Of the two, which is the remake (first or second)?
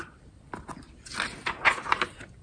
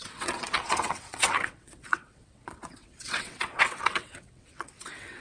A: second